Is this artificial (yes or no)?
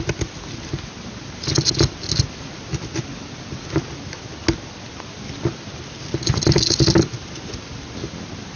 no